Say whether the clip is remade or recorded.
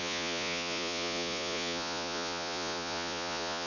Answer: remade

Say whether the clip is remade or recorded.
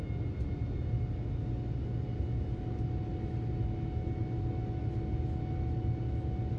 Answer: recorded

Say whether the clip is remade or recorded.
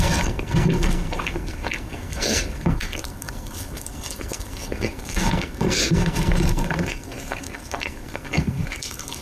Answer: remade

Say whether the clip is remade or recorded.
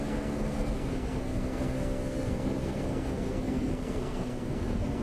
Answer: remade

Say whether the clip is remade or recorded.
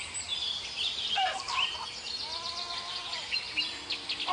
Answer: recorded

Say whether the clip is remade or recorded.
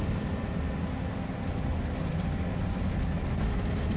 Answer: recorded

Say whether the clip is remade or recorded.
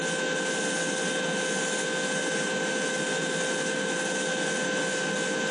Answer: recorded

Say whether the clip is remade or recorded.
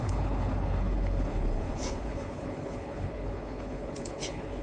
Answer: remade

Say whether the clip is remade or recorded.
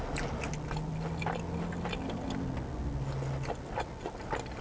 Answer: recorded